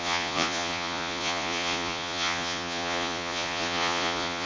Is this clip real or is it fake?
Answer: fake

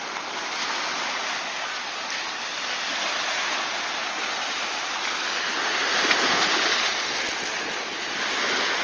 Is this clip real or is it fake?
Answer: real